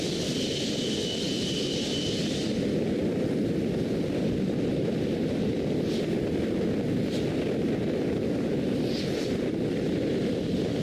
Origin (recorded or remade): recorded